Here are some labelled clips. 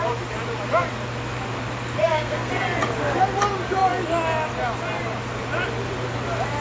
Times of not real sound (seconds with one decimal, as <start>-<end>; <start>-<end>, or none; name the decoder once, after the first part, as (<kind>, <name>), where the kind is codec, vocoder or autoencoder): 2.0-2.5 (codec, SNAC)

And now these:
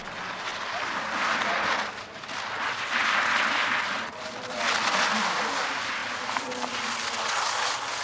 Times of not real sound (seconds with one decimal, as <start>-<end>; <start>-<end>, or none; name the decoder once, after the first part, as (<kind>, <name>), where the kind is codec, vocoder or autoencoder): none

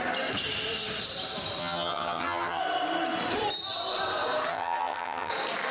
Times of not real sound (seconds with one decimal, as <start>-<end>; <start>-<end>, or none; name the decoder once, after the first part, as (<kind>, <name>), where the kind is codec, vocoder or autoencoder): 1.6-2.6 (vocoder, HiFi-GAN); 4.5-5.3